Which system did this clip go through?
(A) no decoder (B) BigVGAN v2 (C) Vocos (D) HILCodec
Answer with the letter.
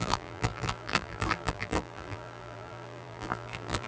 B